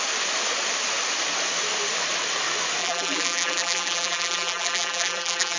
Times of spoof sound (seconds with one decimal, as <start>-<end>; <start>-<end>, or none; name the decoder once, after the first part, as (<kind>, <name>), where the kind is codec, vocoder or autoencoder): 2.8-5.6 (vocoder, BigVGAN v2)